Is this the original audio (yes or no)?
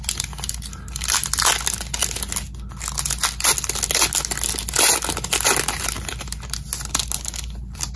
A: yes